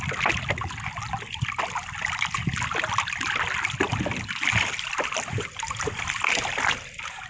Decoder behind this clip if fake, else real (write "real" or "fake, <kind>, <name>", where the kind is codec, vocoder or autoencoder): real